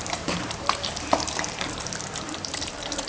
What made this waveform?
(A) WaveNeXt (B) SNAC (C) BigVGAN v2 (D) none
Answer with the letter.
C